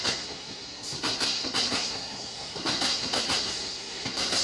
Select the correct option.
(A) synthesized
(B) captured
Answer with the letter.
A